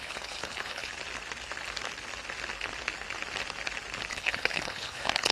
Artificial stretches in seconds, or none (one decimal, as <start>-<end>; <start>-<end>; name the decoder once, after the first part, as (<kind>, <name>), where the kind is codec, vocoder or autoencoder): 0.0-0.9 (codec, HILCodec); 4.1-5.3